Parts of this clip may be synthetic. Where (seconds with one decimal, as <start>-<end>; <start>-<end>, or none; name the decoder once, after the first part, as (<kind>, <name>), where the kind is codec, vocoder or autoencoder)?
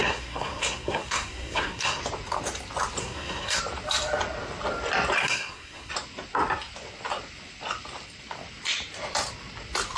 0.0-2.0 (codec, SNAC); 3.0-3.6; 5.2-5.9